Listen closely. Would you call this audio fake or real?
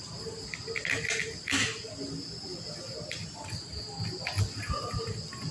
real